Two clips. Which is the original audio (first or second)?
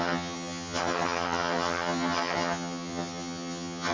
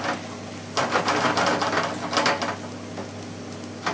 second